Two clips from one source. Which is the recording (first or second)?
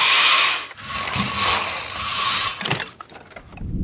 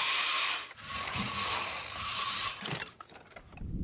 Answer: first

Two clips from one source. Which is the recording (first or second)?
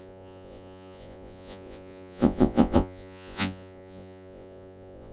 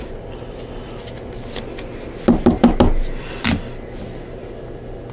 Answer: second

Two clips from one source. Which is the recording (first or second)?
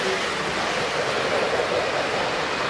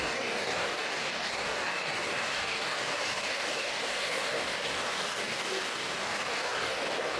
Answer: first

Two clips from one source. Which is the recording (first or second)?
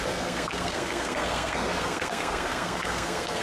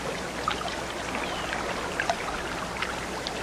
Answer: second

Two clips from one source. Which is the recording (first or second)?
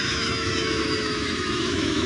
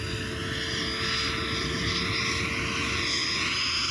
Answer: second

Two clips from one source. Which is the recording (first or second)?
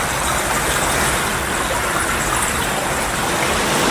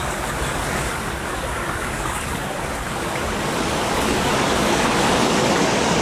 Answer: first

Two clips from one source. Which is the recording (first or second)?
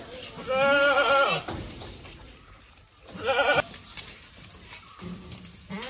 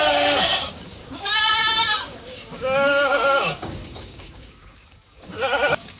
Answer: first